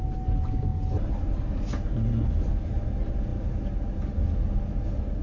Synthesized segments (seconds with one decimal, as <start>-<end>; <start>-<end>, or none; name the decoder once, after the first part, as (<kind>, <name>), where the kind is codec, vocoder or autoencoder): none